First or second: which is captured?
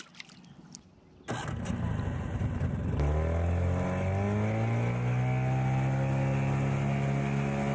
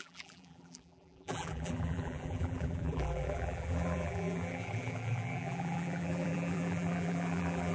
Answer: first